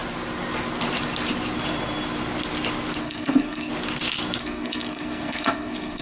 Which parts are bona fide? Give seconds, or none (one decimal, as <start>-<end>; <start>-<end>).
0.0-3.0; 3.7-4.4